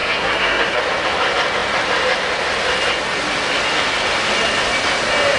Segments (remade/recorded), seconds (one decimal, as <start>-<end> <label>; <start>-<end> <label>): 0.0-0.8 remade; 0.8-5.4 recorded

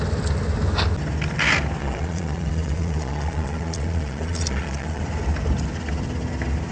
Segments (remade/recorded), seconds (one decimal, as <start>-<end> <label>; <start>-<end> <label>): 0.0-1.8 recorded; 1.8-5.0 remade; 5.0-6.7 recorded

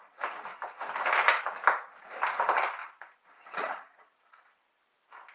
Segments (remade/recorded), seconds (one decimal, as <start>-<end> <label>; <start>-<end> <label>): 0.0-2.8 recorded; 2.8-4.8 remade; 4.8-5.3 recorded

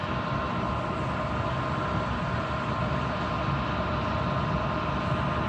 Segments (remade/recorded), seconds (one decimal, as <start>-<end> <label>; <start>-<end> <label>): 0.0-5.5 recorded

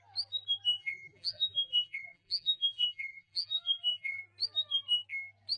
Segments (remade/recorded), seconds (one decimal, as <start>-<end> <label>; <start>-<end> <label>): 0.0-0.8 recorded; 0.8-4.2 remade; 4.2-5.6 recorded

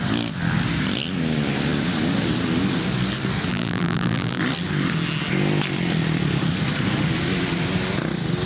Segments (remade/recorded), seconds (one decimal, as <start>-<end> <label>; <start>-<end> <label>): 0.0-3.5 recorded; 3.5-4.4 remade; 4.4-8.5 recorded

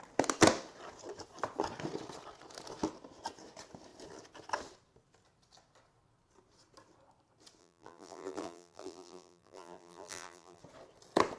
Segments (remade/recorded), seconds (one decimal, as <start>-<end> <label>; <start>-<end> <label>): 0.0-7.6 recorded; 7.6-10.6 remade; 10.6-11.4 recorded